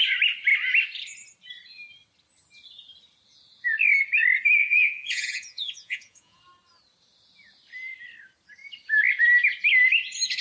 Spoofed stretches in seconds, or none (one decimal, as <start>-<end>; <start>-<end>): 4.6-6.4